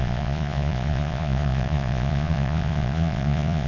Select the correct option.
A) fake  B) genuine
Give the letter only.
A